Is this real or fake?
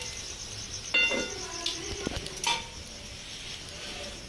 real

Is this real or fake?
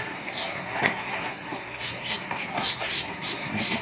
fake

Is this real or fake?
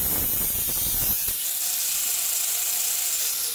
real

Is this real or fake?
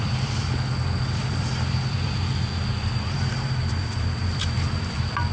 fake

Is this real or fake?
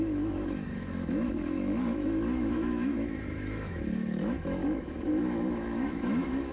fake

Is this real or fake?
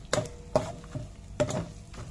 real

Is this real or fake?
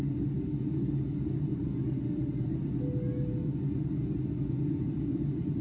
real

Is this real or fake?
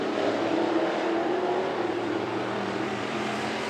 fake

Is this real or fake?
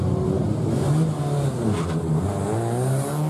real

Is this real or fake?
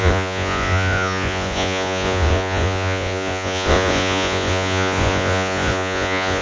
fake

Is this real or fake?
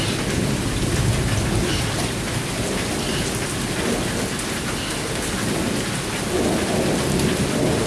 real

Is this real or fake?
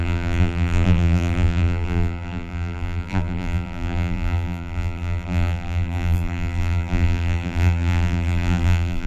fake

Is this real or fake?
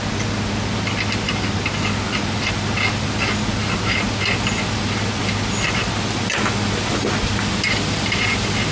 real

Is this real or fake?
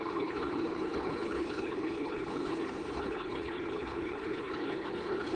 fake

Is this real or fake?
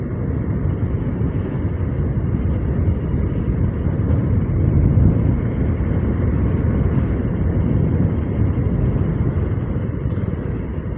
real